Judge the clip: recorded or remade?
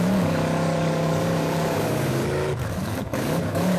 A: remade